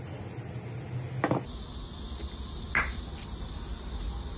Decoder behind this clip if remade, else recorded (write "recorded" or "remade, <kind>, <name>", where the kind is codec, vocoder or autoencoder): recorded